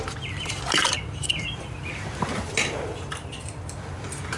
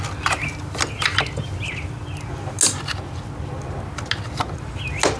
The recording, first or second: second